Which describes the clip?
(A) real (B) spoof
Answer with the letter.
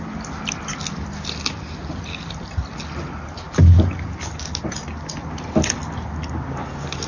A